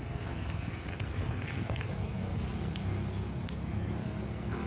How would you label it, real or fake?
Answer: fake